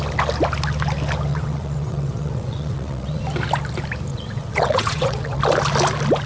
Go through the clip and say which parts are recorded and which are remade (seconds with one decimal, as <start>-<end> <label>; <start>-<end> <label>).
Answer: 0.0-1.3 recorded; 1.3-3.2 remade; 3.2-4.1 recorded; 4.1-5.4 remade; 5.4-6.3 recorded